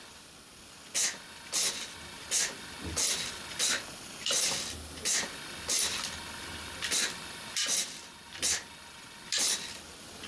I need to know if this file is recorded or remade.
recorded